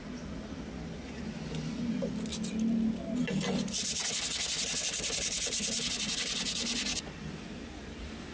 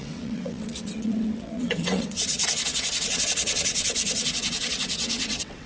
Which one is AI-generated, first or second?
second